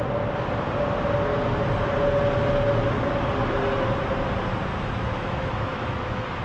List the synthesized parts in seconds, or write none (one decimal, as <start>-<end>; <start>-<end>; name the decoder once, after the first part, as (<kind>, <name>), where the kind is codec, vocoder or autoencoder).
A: 4.7-6.4 (autoencoder, DAC-VAE)